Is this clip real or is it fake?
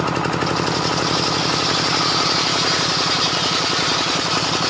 real